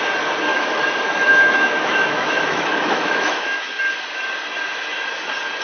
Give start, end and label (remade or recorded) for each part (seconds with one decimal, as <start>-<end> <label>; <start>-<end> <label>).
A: 0.0-0.5 recorded; 0.5-3.8 remade; 3.8-5.6 recorded